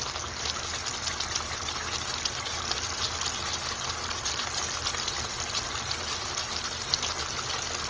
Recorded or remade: recorded